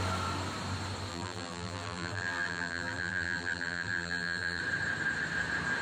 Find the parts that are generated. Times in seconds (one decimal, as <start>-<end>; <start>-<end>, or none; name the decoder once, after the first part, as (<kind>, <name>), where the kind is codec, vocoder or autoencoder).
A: 1.1-4.6 (vocoder, BigVGAN v2)

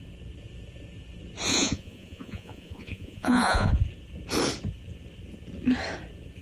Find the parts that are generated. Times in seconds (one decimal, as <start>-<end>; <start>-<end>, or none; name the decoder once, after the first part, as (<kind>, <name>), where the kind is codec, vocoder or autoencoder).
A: 1.5-3.7 (vocoder, Vocos)

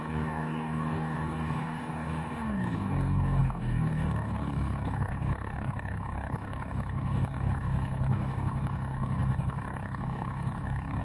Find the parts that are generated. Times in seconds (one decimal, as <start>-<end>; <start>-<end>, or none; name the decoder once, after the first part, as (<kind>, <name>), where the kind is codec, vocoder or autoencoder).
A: 0.0-11.0 (codec, DAC)

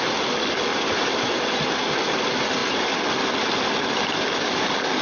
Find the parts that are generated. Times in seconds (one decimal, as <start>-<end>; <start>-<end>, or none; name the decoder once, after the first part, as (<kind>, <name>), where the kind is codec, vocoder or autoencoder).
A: 0.7-1.2 (vocoder, BigVGAN v2)